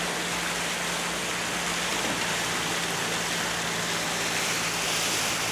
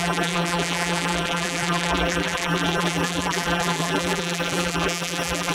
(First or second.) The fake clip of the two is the second